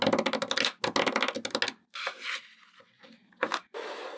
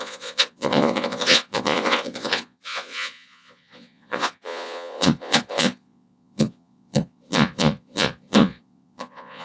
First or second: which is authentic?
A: first